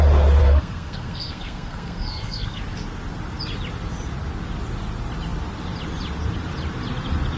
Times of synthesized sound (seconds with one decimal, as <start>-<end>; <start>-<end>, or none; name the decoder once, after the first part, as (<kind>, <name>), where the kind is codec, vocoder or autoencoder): 0.4-2.6 (codec, SNAC)